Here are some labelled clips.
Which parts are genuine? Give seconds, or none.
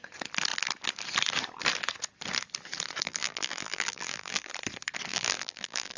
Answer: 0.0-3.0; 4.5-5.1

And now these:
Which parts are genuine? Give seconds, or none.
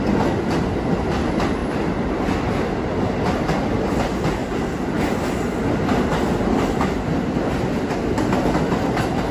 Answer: 0.0-9.3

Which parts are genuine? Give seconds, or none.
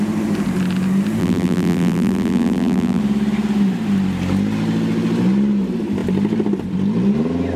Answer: 0.0-1.2; 3.0-7.6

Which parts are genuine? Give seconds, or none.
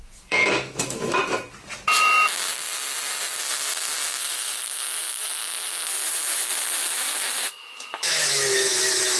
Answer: 1.2-2.0; 2.5-3.4